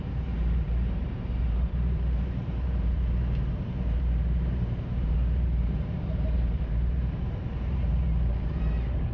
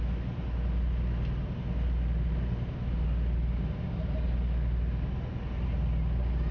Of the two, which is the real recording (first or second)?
second